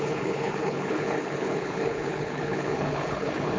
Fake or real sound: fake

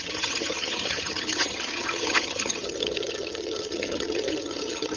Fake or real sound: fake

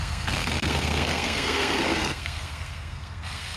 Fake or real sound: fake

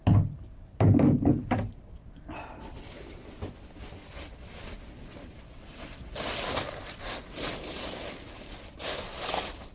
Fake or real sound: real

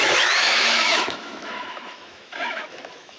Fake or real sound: fake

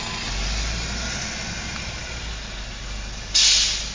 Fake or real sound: real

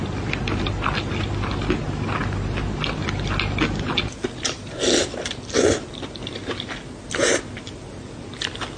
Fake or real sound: real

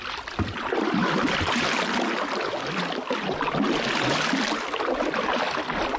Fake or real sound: real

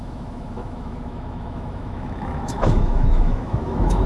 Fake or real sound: fake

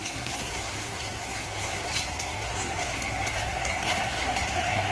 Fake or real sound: fake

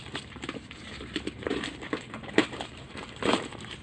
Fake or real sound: fake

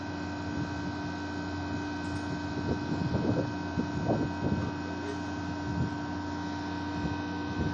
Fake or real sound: real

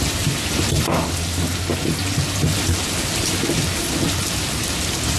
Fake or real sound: real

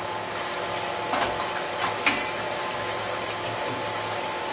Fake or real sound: real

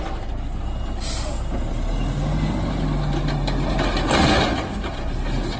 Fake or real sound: real